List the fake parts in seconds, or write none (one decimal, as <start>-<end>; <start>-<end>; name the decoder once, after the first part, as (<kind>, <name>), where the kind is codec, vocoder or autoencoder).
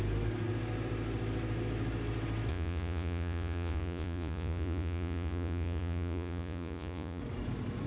2.5-7.2 (vocoder, Vocos)